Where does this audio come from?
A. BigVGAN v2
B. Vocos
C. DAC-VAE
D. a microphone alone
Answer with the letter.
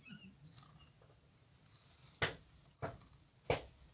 D